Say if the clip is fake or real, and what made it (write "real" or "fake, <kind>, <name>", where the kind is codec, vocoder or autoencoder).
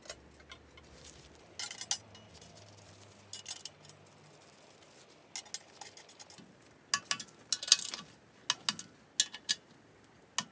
real